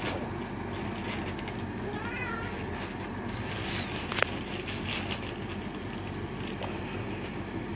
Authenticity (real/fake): real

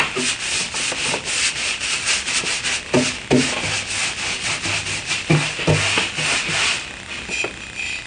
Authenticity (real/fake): real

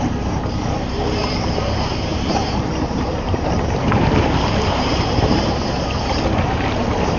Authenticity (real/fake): fake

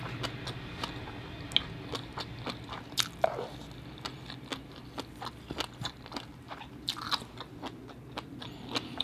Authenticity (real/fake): real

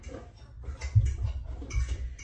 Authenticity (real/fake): real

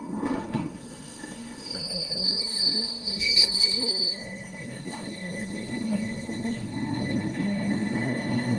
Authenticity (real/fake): fake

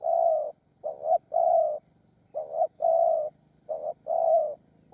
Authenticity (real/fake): real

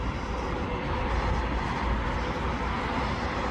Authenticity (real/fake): real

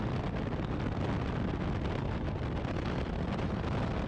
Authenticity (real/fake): real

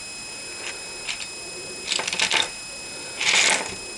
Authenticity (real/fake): real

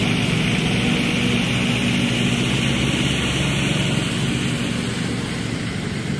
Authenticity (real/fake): real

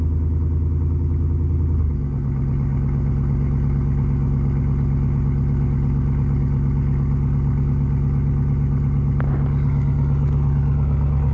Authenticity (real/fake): real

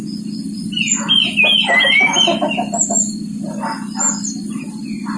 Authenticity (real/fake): real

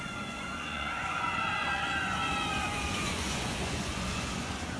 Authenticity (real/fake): fake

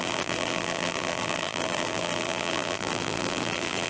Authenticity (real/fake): fake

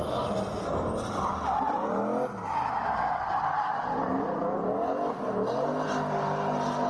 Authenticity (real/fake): real